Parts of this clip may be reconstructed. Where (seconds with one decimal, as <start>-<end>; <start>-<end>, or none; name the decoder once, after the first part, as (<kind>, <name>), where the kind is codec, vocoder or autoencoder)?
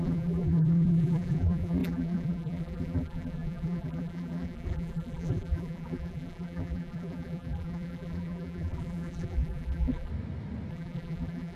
0.0-10.1 (vocoder, BigVGAN v2); 10.7-11.6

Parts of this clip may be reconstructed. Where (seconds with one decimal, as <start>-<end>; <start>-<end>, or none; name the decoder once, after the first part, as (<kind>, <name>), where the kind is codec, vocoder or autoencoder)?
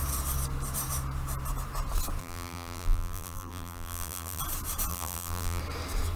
2.2-4.4 (vocoder, BigVGAN v2); 4.9-5.6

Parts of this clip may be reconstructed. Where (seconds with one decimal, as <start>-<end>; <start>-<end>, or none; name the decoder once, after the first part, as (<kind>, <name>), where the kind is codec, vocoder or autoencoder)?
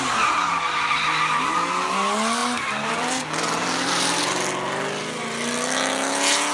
2.4-4.5 (vocoder, BigVGAN v2)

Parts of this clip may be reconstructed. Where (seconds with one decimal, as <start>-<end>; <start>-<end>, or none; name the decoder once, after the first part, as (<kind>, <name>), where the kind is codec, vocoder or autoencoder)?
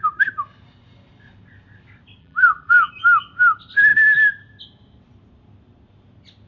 2.2-2.9 (vocoder, BigVGAN v2)